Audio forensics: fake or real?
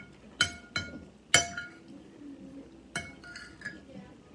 real